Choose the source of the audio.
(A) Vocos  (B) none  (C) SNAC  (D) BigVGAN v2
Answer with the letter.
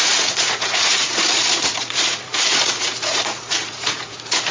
A